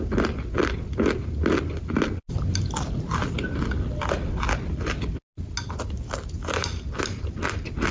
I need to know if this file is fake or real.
real